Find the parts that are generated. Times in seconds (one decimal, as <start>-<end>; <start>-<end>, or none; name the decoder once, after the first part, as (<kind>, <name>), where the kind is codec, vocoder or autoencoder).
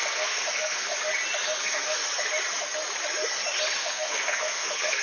0.0-0.9 (codec, SNAC); 1.6-2.0; 3.8-5.0